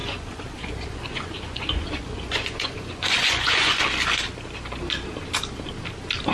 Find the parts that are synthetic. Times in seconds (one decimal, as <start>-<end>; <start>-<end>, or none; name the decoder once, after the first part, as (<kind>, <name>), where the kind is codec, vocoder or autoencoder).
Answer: 0.0-3.8 (vocoder, Vocos)